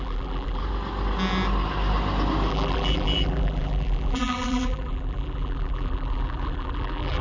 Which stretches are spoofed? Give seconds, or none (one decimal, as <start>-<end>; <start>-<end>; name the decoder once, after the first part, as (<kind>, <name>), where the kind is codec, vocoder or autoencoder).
0.0-0.6 (vocoder, BigVGAN v2); 2.5-7.2